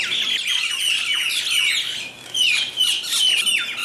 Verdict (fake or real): real